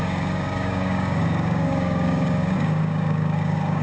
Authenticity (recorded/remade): remade